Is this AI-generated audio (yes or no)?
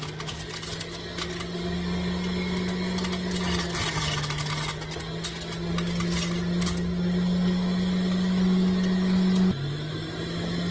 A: no